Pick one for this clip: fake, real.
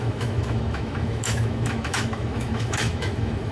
fake